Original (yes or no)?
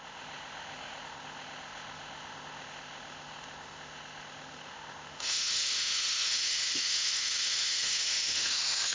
no